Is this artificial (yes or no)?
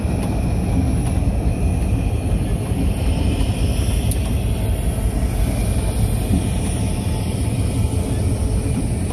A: no